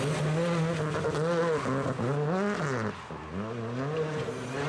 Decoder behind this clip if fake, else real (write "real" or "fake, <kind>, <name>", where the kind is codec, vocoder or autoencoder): real